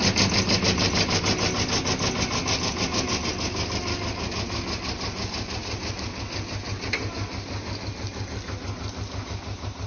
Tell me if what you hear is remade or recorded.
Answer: recorded